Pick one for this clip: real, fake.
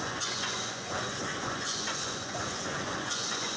fake